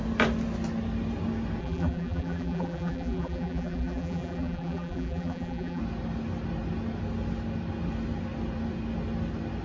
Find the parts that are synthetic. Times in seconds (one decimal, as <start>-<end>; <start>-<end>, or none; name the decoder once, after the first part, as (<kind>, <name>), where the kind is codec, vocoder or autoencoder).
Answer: 1.6-5.8 (vocoder, BigVGAN v2)